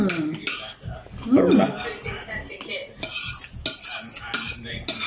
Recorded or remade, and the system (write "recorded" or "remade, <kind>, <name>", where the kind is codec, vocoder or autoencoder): recorded